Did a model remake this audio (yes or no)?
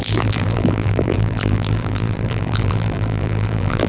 yes